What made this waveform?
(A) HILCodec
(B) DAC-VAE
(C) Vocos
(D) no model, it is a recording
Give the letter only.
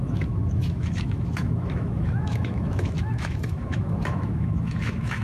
B